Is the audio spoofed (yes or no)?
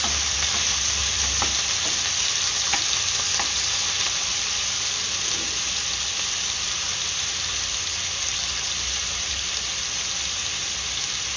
no